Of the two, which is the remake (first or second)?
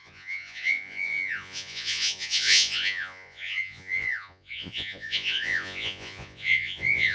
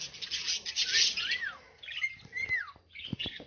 first